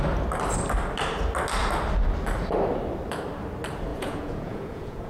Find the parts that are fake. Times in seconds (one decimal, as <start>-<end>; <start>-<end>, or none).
3.9-5.1